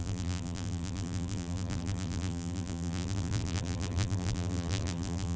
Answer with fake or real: fake